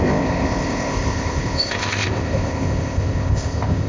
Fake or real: fake